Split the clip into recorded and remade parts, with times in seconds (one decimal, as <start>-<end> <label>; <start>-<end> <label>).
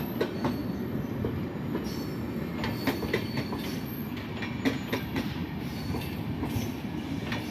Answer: 0.0-4.8 recorded; 4.8-6.3 remade; 6.3-7.5 recorded